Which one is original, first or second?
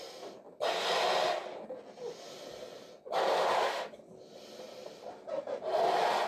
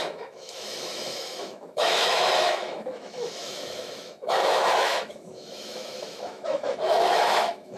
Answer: first